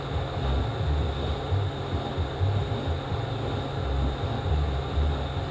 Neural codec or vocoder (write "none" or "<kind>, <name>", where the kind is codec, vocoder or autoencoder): none